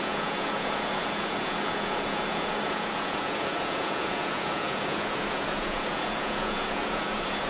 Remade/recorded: remade